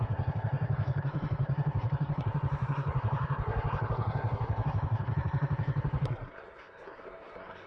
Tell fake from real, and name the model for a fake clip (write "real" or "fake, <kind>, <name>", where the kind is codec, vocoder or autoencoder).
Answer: fake, codec, SNAC